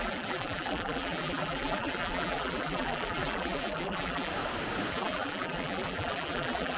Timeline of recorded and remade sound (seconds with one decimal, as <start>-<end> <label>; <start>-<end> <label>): 0.0-4.3 remade; 4.3-4.9 recorded; 4.9-6.8 remade